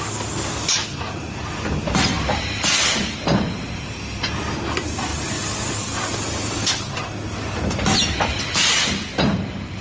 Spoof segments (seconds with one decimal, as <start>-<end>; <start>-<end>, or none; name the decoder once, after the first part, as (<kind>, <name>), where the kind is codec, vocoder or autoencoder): none